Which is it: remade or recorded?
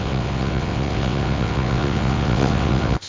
remade